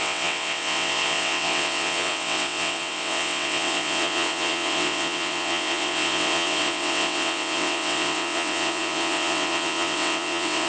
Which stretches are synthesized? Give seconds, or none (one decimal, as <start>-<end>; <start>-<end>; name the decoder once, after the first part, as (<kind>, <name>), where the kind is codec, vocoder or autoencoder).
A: 0.0-10.7 (vocoder, WaveNeXt)

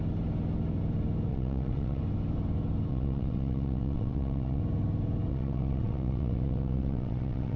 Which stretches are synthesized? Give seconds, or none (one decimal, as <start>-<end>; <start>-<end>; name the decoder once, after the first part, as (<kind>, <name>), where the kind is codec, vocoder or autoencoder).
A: 1.3-2.0 (vocoder, WaveNeXt); 2.9-4.6; 5.3-7.6

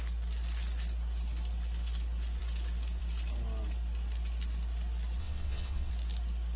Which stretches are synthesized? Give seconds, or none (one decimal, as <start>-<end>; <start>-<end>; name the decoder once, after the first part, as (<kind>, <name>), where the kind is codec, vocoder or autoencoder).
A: 5.2-5.9 (vocoder, WaveNeXt)

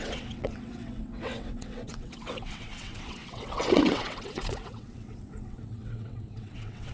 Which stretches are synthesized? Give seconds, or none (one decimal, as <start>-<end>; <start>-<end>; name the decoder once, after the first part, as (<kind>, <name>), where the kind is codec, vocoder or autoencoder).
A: 0.0-6.9 (vocoder, WaveNeXt)